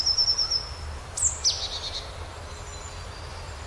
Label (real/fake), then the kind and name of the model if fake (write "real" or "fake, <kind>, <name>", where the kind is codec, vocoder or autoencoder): real